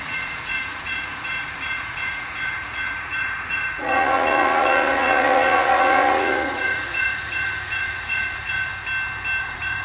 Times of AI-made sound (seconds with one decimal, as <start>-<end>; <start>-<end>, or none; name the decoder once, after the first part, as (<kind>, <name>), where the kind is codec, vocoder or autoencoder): 0.0-8.7 (vocoder, Vocos); 9.4-9.8